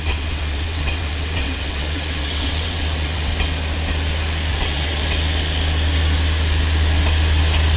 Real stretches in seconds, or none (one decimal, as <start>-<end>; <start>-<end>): 3.3-4.5; 5.0-7.8